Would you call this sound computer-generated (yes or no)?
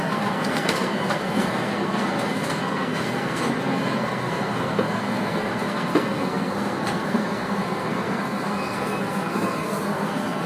yes